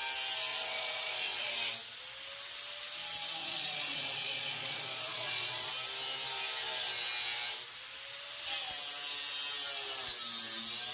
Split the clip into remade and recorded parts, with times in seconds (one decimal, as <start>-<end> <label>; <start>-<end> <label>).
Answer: 0.0-0.5 recorded; 0.5-1.5 remade; 1.5-3.4 recorded; 3.4-5.7 remade; 5.7-10.9 recorded